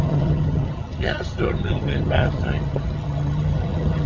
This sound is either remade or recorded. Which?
remade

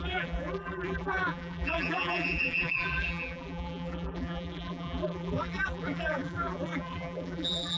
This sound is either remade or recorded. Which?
remade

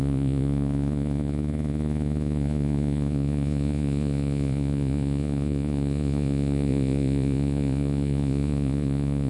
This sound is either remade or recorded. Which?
remade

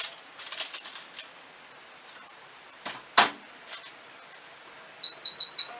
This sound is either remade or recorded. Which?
recorded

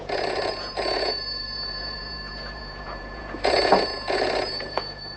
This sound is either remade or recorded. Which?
remade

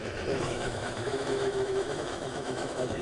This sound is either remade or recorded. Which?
remade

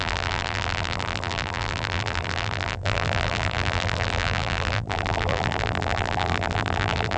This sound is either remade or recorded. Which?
remade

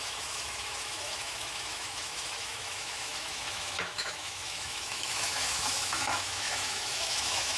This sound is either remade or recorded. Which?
remade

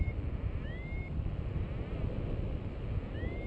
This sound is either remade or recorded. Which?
recorded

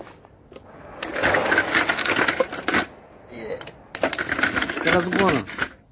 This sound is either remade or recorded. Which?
recorded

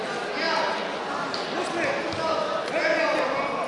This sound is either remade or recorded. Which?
recorded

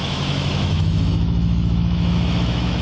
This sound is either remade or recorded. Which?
remade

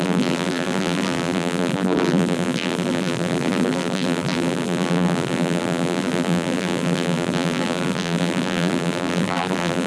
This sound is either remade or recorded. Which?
remade